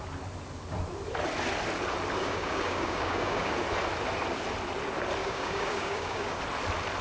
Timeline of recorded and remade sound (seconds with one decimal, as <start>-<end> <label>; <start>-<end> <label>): 0.0-2.2 recorded; 2.2-3.5 remade; 3.5-5.2 recorded; 5.2-6.4 remade; 6.4-7.0 recorded